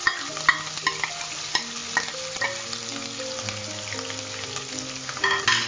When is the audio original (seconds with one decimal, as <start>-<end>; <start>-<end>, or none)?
0.0-5.7